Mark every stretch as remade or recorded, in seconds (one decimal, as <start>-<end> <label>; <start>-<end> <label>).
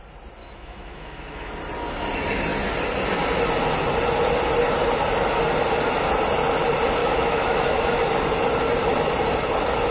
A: 0.0-0.4 recorded; 0.4-1.5 remade; 1.5-7.0 recorded; 7.0-7.8 remade; 7.8-9.9 recorded